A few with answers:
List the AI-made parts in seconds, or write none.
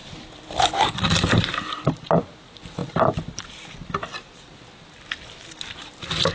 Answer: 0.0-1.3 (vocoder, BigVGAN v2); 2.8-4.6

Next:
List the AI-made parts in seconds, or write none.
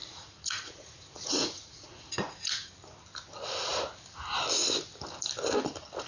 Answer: 0.0-2.7 (vocoder, Vocos)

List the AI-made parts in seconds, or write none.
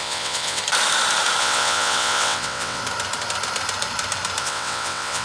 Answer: 0.0-0.6 (vocoder, WaveNeXt); 1.4-2.8; 4.4-5.2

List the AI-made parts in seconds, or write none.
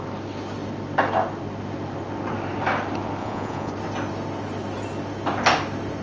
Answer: 3.2-3.7 (vocoder, Vocos)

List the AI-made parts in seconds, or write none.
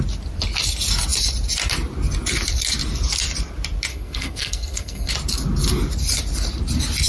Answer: 3.9-5.1 (codec, SNAC)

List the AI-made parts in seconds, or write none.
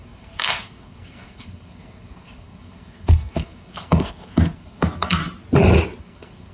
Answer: 0.0-5.2 (codec, SNAC); 6.0-6.5